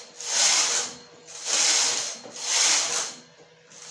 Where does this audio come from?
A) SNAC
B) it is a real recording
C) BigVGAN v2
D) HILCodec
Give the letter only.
B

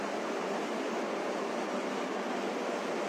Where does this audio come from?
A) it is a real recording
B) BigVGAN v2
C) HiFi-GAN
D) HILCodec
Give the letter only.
A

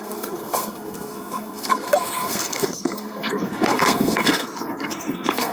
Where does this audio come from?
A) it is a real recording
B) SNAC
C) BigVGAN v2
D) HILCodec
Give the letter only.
B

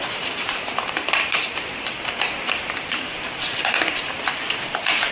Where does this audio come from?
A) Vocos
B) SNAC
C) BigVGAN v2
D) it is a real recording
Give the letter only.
C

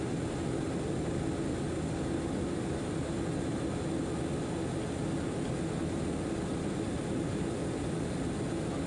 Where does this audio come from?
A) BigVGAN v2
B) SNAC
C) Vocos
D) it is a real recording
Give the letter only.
D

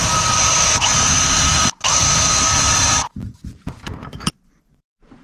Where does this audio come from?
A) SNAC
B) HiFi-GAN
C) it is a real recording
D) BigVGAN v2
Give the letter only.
D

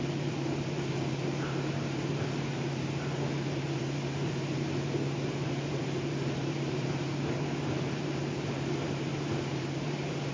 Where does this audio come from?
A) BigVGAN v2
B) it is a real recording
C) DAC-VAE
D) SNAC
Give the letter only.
A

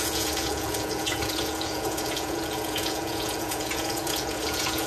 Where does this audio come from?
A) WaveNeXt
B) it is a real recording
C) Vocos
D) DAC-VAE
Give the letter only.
C